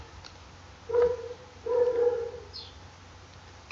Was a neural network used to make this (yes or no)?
no